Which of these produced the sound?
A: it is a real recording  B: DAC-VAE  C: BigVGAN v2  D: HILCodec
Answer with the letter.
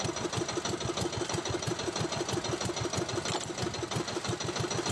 A